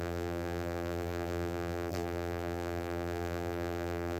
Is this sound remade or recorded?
remade